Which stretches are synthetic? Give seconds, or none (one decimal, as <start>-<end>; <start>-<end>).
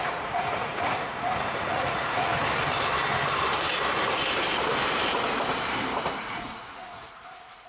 0.0-2.3; 6.3-7.7